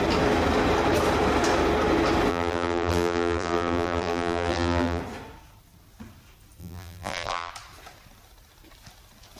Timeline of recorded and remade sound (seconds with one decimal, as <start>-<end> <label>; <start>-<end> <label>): 0.0-2.3 recorded; 2.3-5.0 remade; 5.0-6.6 recorded; 6.6-7.5 remade; 7.5-9.4 recorded